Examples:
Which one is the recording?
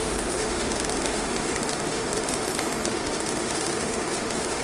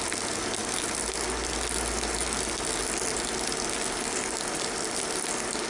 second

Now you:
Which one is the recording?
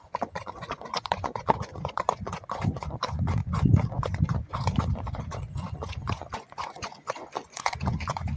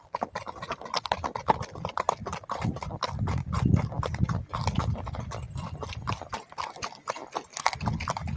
second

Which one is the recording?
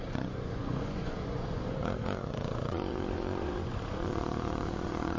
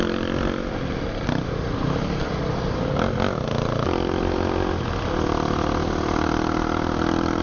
second